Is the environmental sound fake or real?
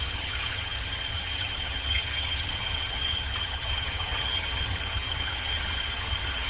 fake